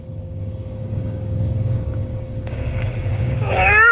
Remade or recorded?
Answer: remade